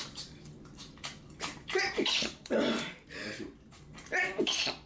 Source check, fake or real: fake